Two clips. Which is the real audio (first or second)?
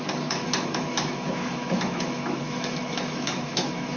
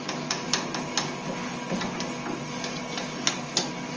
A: second